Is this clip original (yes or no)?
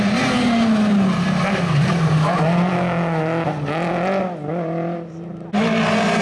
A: yes